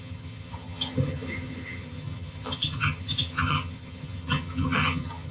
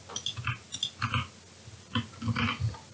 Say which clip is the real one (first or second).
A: second